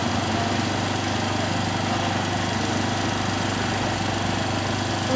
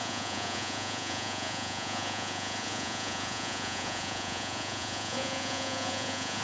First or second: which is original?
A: first